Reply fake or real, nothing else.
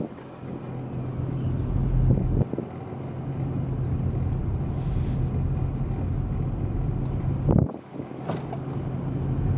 real